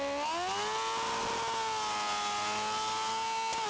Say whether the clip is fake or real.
real